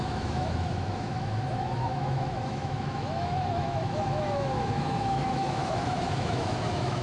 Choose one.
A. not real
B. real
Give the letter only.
A